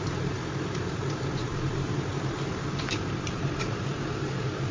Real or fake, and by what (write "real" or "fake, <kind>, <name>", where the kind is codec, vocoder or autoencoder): fake, vocoder, BigVGAN v2